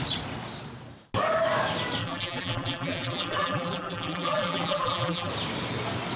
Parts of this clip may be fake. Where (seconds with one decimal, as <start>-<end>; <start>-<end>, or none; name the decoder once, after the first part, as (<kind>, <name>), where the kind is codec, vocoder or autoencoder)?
2.0-5.3 (vocoder, BigVGAN v2)